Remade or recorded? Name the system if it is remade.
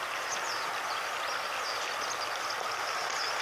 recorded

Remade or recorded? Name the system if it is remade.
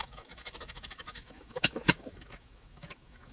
remade, autoencoder, DAC-VAE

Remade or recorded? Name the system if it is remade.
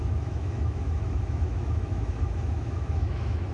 remade, autoencoder, DAC-VAE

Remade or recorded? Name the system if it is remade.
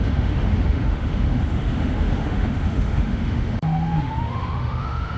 remade, autoencoder, DAC-VAE